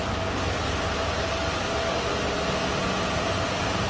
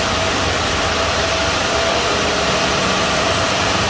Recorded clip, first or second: first